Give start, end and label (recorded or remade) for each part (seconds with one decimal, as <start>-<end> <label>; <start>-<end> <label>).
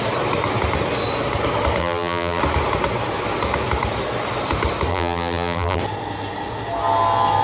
0.0-1.8 recorded; 1.8-2.4 remade; 2.4-4.9 recorded; 4.9-5.8 remade; 5.8-7.4 recorded